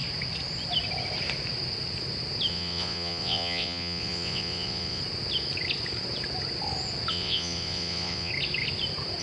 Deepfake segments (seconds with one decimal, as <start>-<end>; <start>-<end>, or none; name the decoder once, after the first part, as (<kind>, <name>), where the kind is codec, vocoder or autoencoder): 2.5-5.0 (vocoder, WaveNeXt); 7.1-8.3